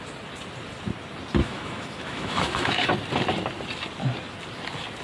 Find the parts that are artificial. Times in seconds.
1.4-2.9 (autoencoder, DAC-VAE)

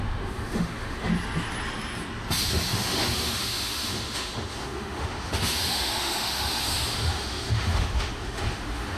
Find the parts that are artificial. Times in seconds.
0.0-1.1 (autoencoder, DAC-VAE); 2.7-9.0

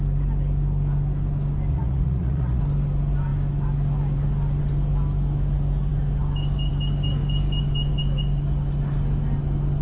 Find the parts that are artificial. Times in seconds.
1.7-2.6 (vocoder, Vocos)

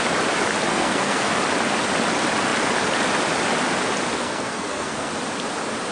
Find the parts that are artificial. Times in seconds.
0.7-1.4 (codec, SNAC); 4.1-5.1

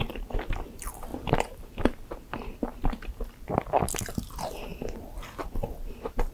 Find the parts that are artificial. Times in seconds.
1.1-1.7 (vocoder, BigVGAN v2); 2.7-3.4